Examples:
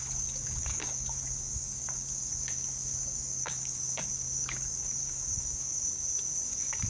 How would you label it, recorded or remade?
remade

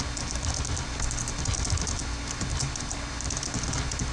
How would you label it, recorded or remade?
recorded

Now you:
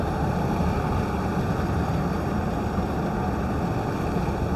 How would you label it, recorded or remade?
recorded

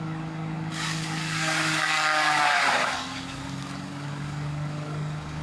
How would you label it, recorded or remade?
remade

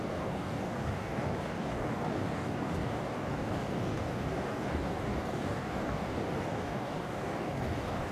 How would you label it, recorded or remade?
remade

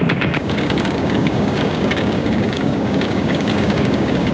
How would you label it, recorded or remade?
remade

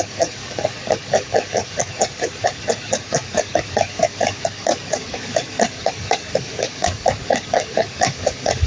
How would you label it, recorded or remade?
remade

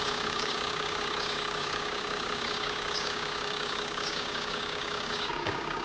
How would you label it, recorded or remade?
remade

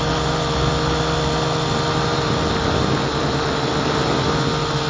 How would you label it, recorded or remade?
recorded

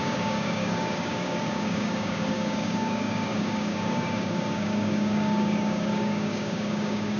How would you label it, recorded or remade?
remade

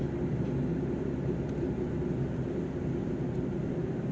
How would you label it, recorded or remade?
recorded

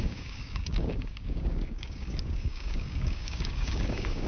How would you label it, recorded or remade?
remade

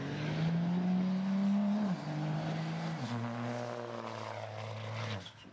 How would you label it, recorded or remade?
recorded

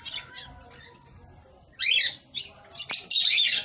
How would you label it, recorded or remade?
recorded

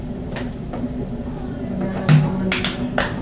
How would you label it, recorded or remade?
recorded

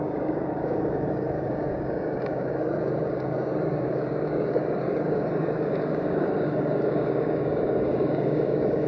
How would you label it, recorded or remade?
remade